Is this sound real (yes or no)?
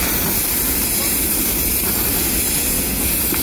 yes